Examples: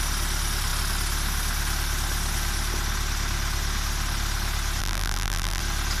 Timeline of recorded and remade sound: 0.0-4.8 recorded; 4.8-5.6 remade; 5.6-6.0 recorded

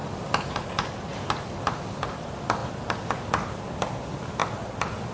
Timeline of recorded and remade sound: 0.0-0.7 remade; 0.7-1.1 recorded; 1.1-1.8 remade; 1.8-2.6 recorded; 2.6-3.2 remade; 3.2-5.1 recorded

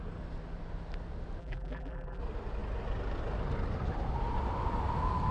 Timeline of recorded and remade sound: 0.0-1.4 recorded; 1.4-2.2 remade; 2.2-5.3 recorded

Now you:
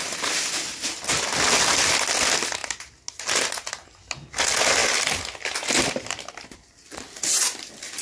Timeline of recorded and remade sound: 0.0-8.0 recorded